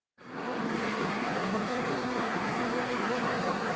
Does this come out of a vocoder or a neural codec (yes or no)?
yes